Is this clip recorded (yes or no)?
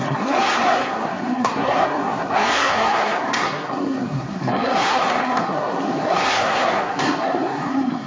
no